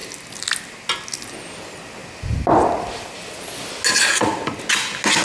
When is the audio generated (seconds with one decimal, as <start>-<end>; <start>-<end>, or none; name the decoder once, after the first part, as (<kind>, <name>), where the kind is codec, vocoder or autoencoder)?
none